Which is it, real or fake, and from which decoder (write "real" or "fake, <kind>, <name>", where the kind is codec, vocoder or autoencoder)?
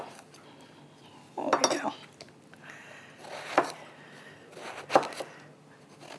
real